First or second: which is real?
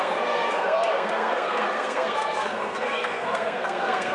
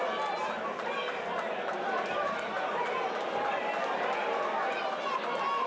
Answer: second